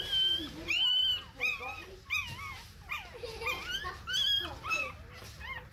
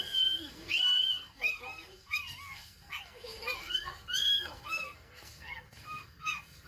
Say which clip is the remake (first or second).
second